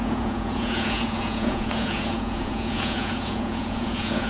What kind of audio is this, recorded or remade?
remade